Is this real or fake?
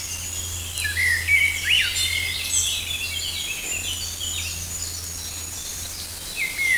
real